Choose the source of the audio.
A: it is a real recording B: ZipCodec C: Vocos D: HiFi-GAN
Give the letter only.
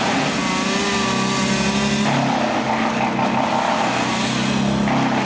A